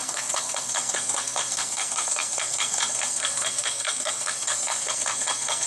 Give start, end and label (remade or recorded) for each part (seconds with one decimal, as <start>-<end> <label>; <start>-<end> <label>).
0.0-5.7 remade